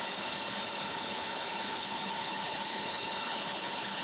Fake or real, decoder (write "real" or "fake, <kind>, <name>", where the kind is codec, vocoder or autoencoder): fake, codec, HILCodec